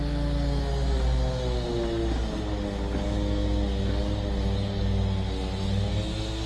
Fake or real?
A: real